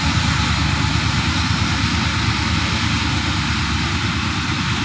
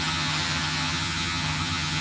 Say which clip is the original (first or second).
first